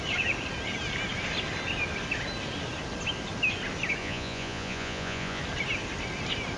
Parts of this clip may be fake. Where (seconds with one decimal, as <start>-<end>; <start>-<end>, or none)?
4.0-5.4